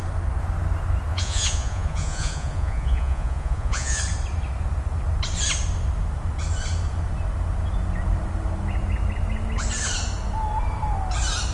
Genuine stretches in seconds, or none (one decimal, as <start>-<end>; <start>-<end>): 0.0-1.1; 4.0-11.5